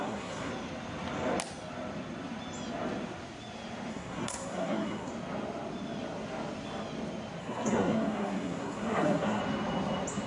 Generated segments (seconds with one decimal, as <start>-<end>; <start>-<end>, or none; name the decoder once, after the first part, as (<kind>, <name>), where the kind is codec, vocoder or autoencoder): 0.0-0.5 (codec, SNAC); 3.9-5.1; 7.4-9.4